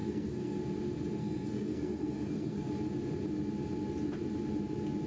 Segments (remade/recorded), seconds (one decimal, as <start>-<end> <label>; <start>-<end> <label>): 0.0-0.6 remade; 0.6-1.2 recorded; 1.2-2.7 remade; 2.7-5.1 recorded